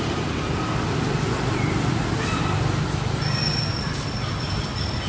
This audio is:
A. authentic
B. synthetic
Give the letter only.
A